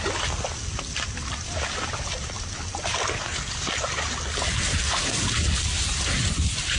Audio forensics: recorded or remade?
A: recorded